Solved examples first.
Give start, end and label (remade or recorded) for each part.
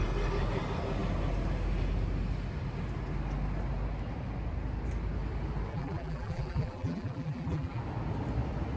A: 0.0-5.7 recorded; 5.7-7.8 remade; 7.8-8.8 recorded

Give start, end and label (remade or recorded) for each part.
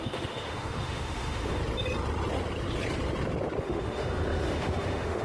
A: 0.0-1.6 remade; 1.6-3.6 recorded; 3.6-5.2 remade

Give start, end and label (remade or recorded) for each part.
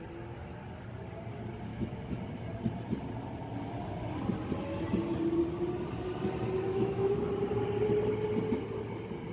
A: 0.0-1.7 recorded; 1.7-2.2 remade; 2.2-6.7 recorded; 6.7-7.3 remade; 7.3-9.3 recorded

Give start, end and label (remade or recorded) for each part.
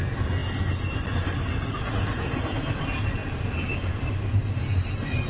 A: 0.0-5.3 recorded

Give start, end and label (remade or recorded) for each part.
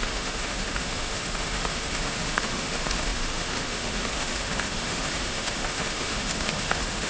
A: 0.0-7.1 remade